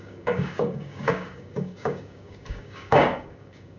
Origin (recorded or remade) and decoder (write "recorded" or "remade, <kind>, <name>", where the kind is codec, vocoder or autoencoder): remade, codec, DAC